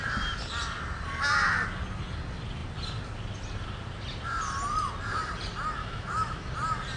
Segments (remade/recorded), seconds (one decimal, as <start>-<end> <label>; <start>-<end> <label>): 0.0-5.8 recorded; 5.8-6.5 remade; 6.5-7.0 recorded